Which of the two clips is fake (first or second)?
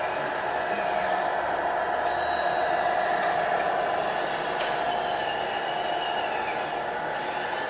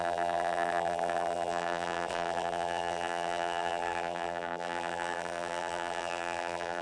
second